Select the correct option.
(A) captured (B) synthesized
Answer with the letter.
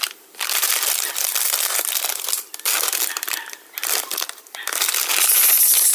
A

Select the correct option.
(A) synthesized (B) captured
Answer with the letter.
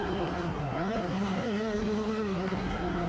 A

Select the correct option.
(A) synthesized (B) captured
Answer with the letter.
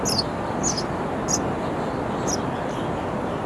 B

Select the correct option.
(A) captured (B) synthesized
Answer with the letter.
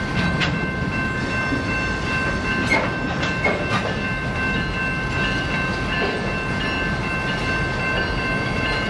A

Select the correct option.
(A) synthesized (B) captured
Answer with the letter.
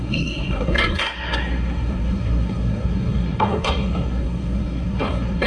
A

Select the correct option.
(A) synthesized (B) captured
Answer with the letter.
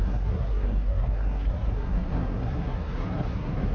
A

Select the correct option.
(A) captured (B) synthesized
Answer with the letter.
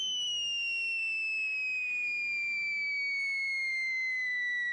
A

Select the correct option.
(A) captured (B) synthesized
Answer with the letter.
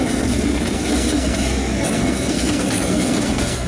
B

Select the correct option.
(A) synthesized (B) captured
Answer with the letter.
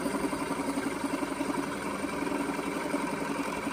B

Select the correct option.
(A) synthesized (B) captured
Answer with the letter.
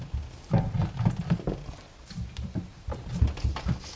B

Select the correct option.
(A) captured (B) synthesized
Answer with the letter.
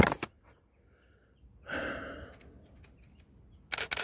A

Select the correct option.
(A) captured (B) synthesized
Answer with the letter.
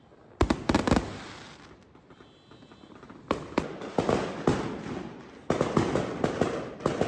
A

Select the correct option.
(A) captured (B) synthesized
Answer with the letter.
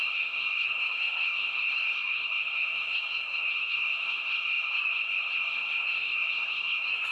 B